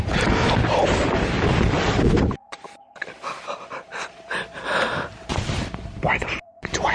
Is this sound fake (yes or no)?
yes